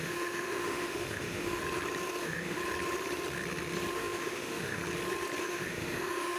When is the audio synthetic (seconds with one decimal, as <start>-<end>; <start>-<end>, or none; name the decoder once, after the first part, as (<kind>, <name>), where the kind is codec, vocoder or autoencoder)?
0.0-1.6 (autoencoder, DAC-VAE); 2.2-2.6; 3.9-4.8; 5.4-6.4